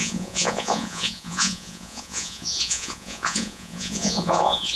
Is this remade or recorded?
remade